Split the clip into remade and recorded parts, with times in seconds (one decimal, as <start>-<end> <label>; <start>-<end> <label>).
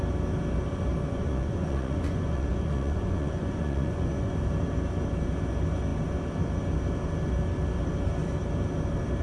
0.0-1.0 recorded; 1.0-4.3 remade; 4.3-9.2 recorded